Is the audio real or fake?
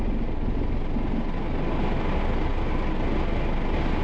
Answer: real